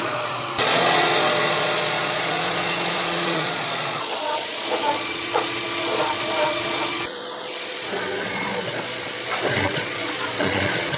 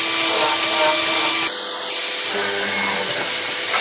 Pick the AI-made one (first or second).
first